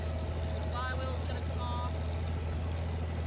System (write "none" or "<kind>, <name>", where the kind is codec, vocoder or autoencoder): none